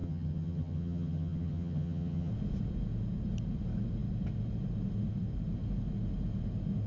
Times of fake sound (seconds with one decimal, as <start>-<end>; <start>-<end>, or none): 0.0-2.3